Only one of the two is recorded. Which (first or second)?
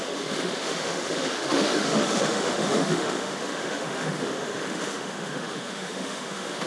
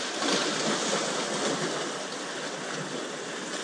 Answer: second